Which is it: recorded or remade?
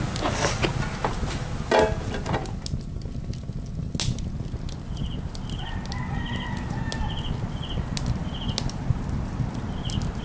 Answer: recorded